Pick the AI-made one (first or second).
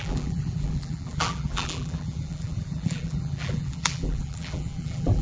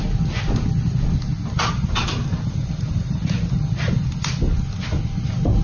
first